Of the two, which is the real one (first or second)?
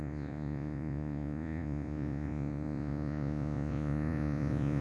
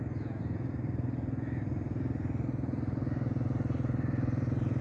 second